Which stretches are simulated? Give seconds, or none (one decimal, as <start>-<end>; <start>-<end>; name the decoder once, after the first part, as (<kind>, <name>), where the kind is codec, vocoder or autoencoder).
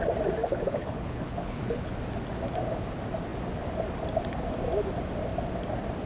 0.4-1.9 (codec, HILCodec)